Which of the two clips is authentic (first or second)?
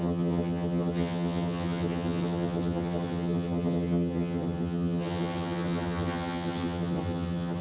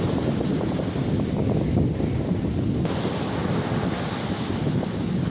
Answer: second